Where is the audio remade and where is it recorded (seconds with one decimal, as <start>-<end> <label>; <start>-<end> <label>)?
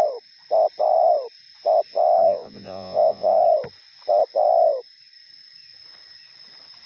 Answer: 0.0-1.9 recorded; 1.9-3.4 remade; 3.4-6.9 recorded